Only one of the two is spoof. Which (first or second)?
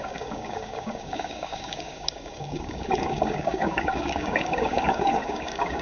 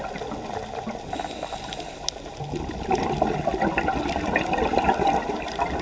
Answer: first